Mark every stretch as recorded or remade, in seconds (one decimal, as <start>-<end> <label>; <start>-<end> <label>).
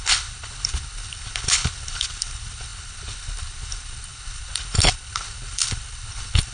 0.0-6.5 remade